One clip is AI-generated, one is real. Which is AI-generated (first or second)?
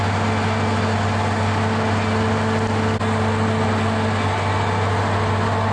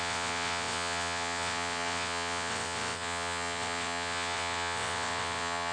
second